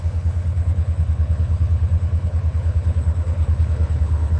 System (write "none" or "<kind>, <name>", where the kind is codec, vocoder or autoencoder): codec, HILCodec